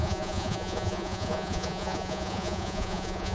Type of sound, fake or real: fake